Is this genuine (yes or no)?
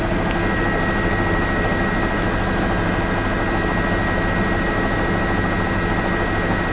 yes